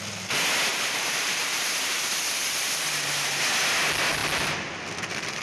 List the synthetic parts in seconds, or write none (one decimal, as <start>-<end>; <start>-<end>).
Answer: 0.7-3.4